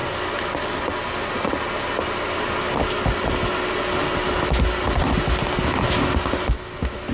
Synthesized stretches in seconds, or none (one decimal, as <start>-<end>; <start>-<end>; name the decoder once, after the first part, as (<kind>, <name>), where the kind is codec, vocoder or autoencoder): none